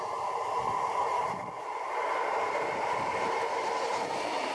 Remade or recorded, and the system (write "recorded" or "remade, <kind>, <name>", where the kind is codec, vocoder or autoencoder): remade, vocoder, BigVGAN v2